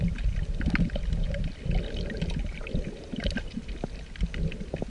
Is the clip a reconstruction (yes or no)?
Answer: no